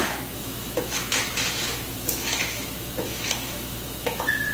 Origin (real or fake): fake